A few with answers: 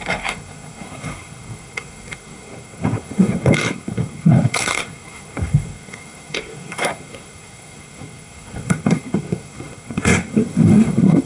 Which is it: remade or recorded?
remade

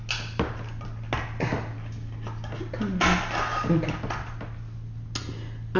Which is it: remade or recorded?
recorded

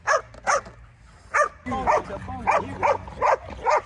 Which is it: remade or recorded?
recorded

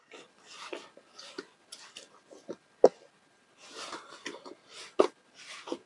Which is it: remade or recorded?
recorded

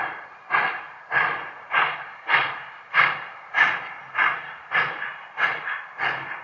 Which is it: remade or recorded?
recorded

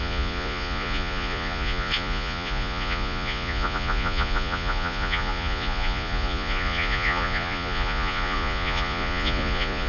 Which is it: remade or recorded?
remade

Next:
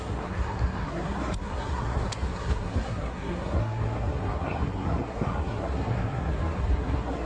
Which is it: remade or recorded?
remade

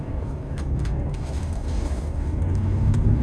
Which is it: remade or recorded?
remade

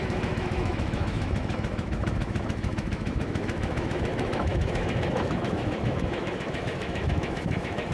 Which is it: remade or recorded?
remade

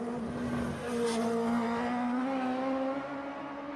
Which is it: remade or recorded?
recorded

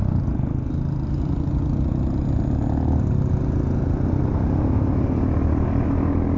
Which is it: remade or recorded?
recorded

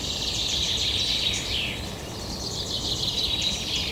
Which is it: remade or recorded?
recorded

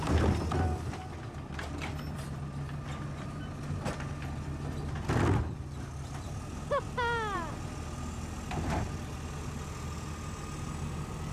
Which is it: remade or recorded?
recorded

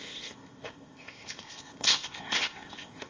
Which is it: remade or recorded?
remade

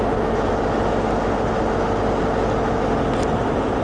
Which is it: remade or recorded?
recorded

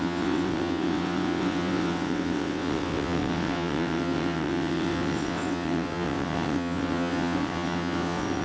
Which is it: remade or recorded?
remade